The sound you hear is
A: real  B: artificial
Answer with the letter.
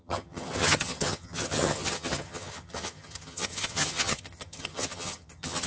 B